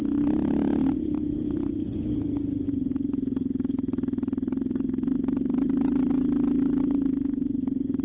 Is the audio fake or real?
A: real